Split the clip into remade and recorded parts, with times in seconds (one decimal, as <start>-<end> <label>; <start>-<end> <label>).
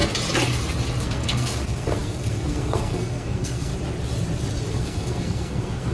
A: 0.0-1.0 recorded; 1.0-3.7 remade; 3.7-4.7 recorded; 4.7-5.9 remade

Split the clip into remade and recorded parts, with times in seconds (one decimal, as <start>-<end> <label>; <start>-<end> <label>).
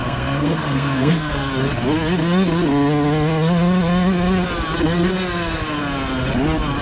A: 0.0-1.5 remade; 1.5-6.8 recorded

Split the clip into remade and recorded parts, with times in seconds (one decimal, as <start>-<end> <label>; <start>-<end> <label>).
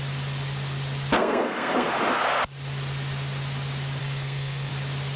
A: 0.0-1.2 recorded; 1.2-2.0 remade; 2.0-4.0 recorded; 4.0-4.7 remade; 4.7-5.2 recorded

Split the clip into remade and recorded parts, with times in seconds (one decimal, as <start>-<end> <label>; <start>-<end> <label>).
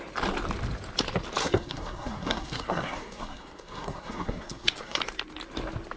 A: 0.0-1.4 recorded; 1.4-5.0 remade; 5.0-6.0 recorded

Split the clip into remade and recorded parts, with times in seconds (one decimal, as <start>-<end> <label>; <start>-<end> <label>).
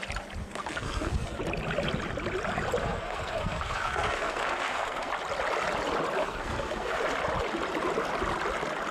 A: 0.0-0.4 recorded; 0.4-1.4 remade; 1.4-2.8 recorded; 2.8-5.1 remade; 5.1-6.2 recorded; 6.2-7.0 remade; 7.0-8.9 recorded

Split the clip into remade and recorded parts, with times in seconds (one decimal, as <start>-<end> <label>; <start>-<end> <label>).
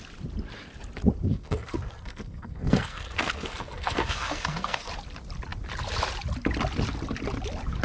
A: 0.0-1.3 recorded; 1.3-4.9 remade; 4.9-7.8 recorded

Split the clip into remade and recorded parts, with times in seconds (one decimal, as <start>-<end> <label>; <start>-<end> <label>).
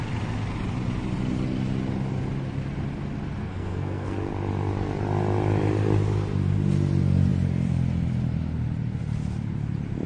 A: 0.0-3.4 recorded; 3.4-4.3 remade; 4.3-10.1 recorded